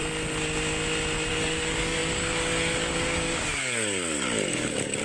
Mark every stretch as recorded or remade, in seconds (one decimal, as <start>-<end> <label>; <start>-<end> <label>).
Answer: 0.0-1.3 recorded; 1.3-5.0 remade